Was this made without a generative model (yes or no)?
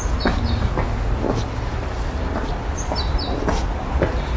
yes